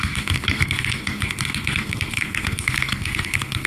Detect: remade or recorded remade